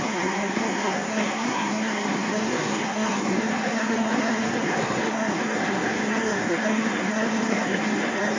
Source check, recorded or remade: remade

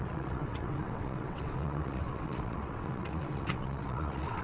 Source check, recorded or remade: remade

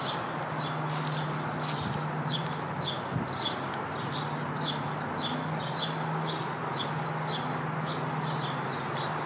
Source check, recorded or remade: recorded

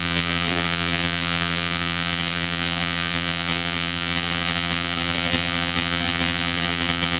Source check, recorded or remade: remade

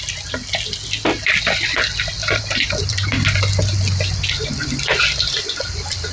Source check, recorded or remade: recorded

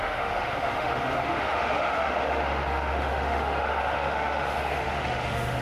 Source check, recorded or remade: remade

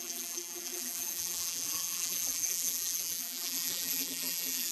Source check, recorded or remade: remade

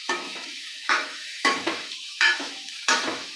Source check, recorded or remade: remade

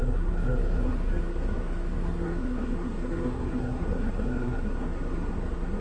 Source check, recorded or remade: remade